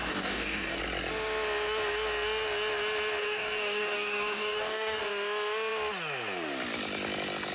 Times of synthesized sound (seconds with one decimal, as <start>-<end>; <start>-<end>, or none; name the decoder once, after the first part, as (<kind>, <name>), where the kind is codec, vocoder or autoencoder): 0.0-0.8 (codec, DAC); 3.2-5.0